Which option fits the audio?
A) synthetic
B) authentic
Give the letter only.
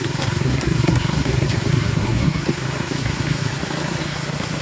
A